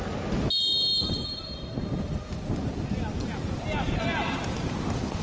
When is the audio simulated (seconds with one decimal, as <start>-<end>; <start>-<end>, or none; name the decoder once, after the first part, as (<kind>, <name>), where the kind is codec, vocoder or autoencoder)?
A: none